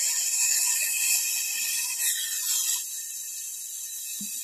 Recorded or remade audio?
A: recorded